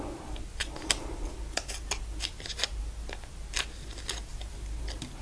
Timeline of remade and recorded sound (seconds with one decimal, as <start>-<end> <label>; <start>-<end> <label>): 0.0-0.6 recorded; 0.6-1.3 remade; 1.3-5.2 recorded